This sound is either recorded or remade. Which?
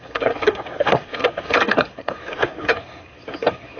remade